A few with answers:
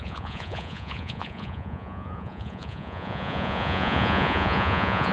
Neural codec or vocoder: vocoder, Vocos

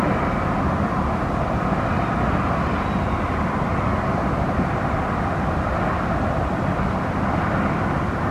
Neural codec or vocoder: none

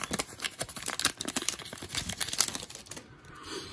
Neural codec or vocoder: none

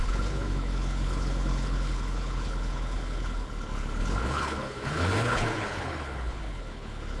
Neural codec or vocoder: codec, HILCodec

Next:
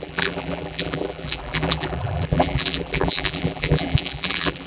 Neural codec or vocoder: vocoder, BigVGAN v2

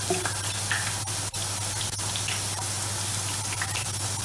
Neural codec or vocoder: none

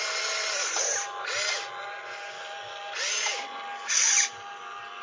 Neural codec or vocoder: none